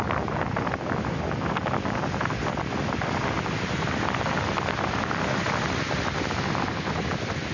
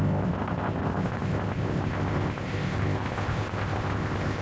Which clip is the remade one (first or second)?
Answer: second